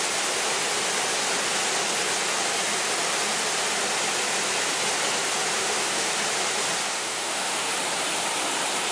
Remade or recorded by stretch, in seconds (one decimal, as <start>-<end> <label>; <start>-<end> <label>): 0.0-5.6 recorded; 5.6-6.1 remade; 6.1-6.9 recorded; 6.9-7.7 remade; 7.7-8.9 recorded